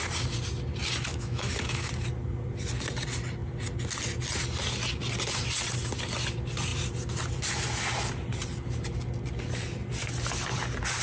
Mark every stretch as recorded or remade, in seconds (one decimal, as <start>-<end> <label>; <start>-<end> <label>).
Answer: 0.0-1.1 recorded; 1.1-1.9 remade; 1.9-11.0 recorded